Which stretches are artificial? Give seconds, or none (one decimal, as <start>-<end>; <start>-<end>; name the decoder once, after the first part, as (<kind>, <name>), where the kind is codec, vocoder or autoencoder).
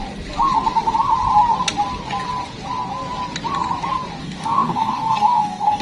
4.2-5.8 (codec, DAC)